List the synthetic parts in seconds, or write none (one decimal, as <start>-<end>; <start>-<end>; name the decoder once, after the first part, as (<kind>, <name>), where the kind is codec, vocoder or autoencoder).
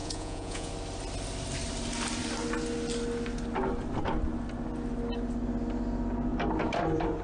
0.0-0.7 (vocoder, Vocos)